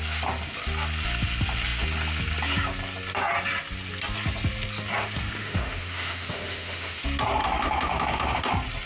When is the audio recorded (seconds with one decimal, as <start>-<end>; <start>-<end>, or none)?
0.0-5.4; 7.0-7.4; 8.5-8.9

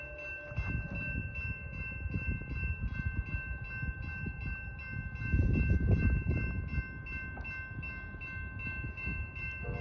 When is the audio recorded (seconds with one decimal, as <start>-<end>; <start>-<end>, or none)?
0.0-9.8

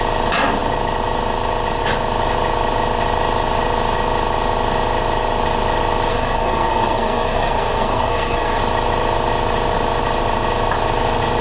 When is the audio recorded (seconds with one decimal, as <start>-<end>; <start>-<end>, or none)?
0.0-6.1; 8.6-11.4

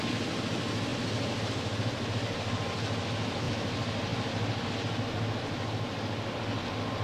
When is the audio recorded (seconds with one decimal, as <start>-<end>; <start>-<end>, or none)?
0.0-7.0

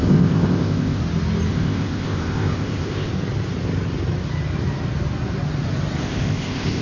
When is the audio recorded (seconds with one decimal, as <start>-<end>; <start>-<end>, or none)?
1.0-1.5; 3.1-6.0

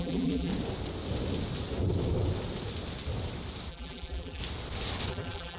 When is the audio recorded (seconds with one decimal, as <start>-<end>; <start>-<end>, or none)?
0.5-3.7; 4.4-5.1

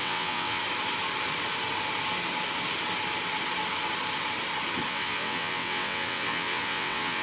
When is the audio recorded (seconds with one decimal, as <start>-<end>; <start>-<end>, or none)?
0.6-4.9

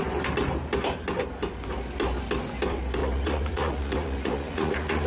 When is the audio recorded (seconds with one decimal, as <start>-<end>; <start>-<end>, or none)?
0.0-3.0